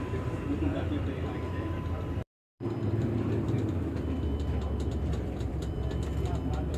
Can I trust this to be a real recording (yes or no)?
no